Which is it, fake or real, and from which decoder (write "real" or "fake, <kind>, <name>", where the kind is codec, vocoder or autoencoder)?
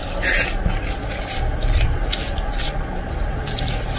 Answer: real